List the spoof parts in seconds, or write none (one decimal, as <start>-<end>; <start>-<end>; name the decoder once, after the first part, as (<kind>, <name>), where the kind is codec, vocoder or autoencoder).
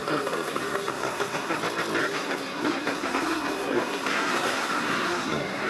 0.0-1.6 (codec, SNAC); 2.0-5.7